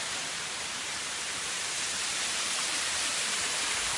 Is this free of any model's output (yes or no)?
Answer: no